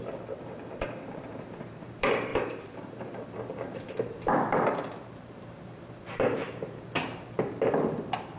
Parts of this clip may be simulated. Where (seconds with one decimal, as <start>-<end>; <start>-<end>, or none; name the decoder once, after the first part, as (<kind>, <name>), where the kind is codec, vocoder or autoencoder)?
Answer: 0.0-8.4 (vocoder, BigVGAN v2)